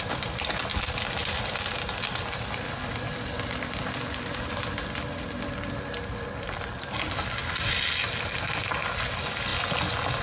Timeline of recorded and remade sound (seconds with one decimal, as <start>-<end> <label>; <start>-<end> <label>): 0.0-10.2 recorded